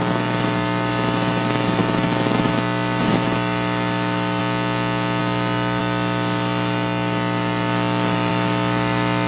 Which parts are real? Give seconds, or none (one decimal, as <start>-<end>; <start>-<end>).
4.4-5.2

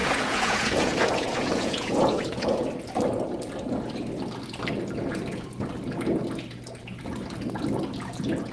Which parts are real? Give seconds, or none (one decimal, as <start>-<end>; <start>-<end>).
2.7-8.5

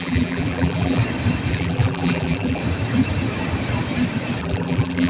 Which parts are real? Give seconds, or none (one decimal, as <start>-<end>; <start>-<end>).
1.0-1.5; 2.6-4.4